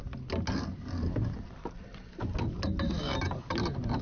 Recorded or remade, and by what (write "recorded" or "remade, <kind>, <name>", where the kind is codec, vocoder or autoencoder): recorded